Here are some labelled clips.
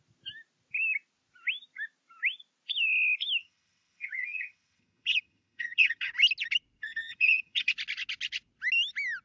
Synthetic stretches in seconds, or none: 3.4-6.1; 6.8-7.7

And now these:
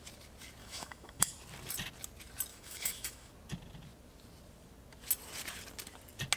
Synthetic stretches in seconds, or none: 0.6-1.3; 2.5-3.3

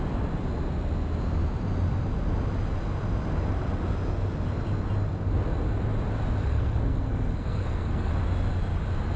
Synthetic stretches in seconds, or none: 6.4-8.1